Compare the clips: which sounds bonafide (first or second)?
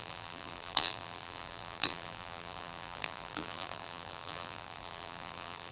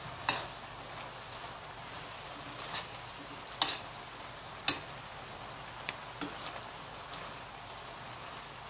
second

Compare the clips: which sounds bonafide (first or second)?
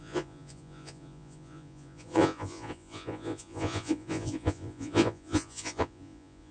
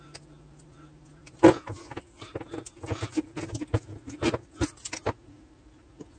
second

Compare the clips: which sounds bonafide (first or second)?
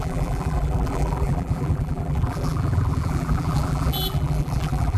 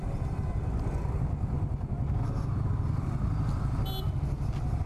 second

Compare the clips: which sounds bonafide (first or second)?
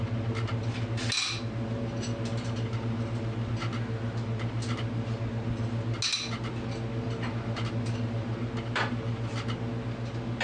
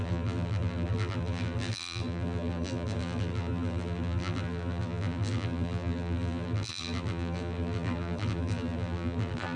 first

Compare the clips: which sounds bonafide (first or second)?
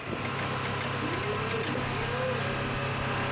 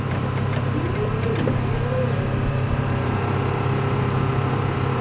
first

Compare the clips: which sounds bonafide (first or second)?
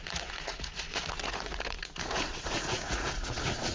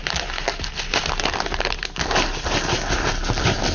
second